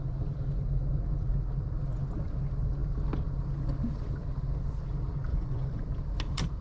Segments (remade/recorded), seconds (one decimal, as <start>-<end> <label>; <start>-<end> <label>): 0.0-5.3 recorded; 5.3-5.8 remade; 5.8-6.6 recorded

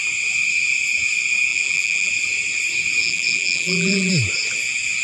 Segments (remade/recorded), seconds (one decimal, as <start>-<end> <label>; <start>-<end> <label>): 0.0-1.5 recorded; 1.5-2.1 remade; 2.1-3.0 recorded; 3.0-4.1 remade; 4.1-5.0 recorded

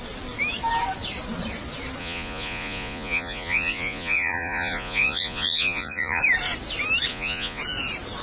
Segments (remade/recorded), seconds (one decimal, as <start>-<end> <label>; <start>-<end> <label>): 0.0-2.0 recorded; 2.0-6.2 remade; 6.2-7.1 recorded; 7.1-7.6 remade; 7.6-8.2 recorded

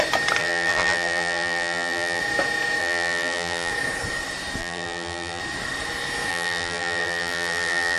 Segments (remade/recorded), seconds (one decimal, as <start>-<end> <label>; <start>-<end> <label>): 0.0-0.4 recorded; 0.4-2.2 remade; 2.2-2.8 recorded; 2.8-3.7 remade; 3.7-4.6 recorded; 4.6-5.4 remade; 5.4-6.3 recorded; 6.3-8.0 remade